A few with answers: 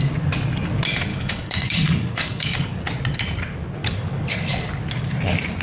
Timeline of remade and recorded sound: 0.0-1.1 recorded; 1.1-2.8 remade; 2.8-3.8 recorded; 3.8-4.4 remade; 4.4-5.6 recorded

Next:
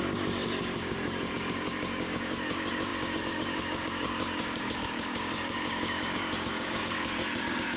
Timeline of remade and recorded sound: 0.0-7.8 remade

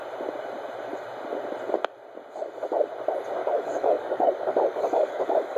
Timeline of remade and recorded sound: 0.0-3.4 recorded; 3.4-5.6 remade